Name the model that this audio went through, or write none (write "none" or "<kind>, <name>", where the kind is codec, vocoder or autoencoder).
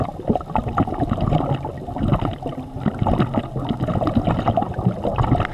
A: none